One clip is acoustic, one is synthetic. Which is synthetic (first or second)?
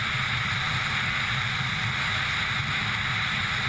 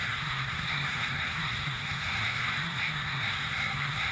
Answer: second